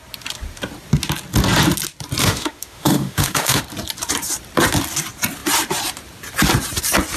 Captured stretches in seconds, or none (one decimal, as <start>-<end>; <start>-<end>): 0.0-2.2; 3.6-7.2